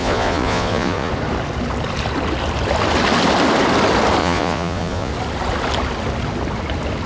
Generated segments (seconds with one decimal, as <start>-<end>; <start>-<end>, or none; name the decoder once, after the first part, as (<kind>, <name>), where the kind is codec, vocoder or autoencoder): 0.0-1.1 (vocoder, Vocos); 4.2-5.1